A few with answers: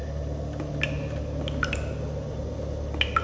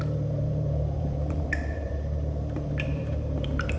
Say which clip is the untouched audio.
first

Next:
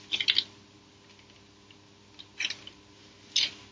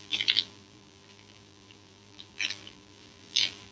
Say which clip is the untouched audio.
first